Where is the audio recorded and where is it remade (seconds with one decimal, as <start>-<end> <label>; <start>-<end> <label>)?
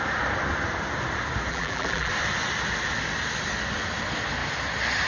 0.0-1.5 recorded; 1.5-2.1 remade; 2.1-5.1 recorded